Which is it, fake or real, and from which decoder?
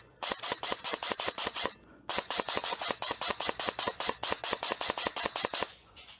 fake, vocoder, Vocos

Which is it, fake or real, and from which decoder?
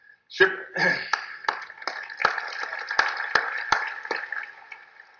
real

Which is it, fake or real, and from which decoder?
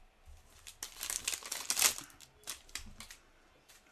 real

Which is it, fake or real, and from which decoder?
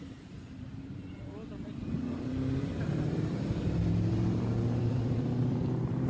fake, vocoder, BigVGAN v2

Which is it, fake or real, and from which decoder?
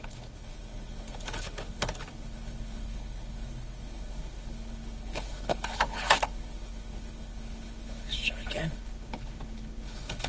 fake, codec, HILCodec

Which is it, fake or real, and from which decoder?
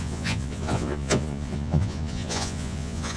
fake, vocoder, Vocos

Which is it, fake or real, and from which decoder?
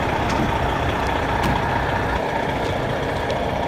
real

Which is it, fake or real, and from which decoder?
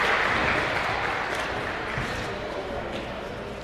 real